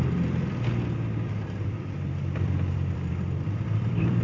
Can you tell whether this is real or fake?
fake